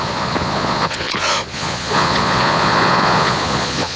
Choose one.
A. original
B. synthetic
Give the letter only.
B